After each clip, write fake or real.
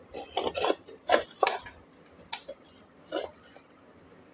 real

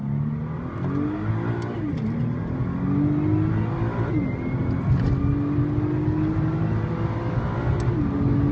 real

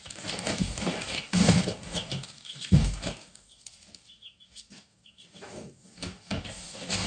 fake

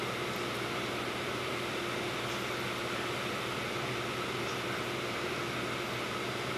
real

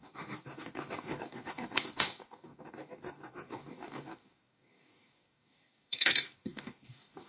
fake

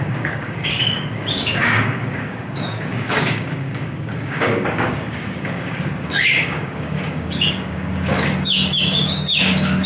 fake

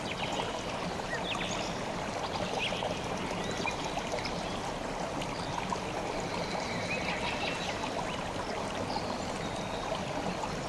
real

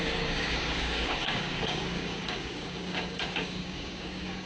fake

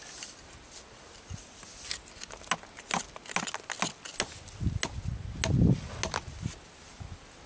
real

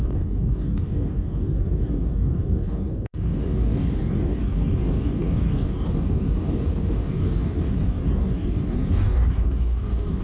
fake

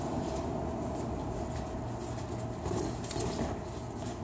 real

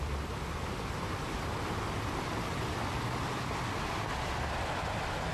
real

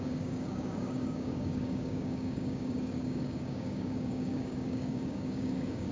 fake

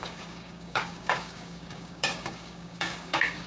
fake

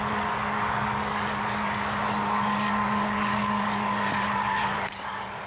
fake